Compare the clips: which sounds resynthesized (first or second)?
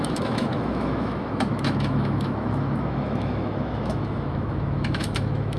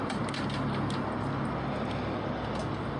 first